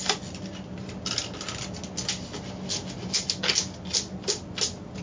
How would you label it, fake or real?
real